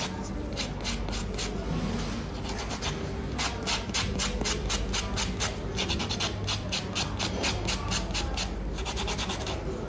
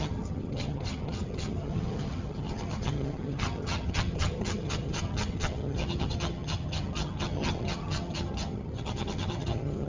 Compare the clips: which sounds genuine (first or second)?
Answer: first